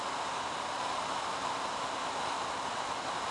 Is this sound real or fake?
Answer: real